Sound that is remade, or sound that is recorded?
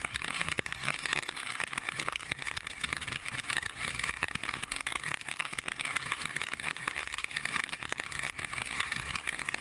remade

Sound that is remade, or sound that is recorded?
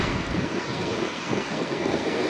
remade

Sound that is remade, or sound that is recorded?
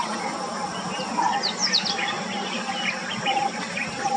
recorded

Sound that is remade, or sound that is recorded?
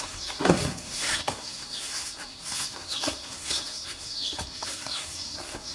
remade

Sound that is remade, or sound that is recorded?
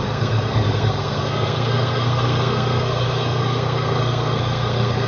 remade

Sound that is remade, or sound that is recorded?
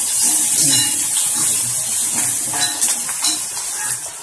recorded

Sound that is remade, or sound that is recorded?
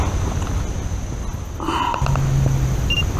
recorded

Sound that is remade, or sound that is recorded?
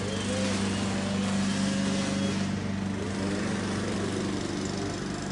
recorded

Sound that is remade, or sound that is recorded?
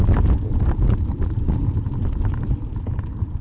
recorded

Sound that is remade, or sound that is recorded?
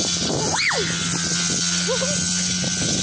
recorded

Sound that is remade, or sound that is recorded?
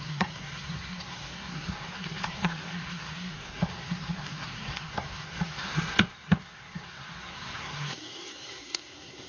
remade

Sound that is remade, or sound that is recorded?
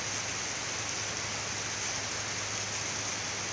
recorded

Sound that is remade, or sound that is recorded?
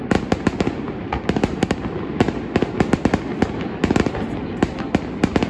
recorded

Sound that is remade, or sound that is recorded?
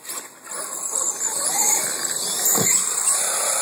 recorded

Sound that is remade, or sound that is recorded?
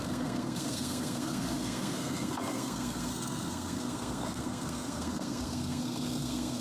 remade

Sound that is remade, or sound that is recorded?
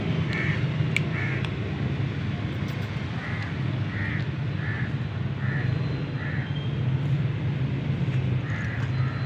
recorded